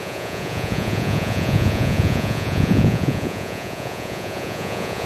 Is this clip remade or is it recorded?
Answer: remade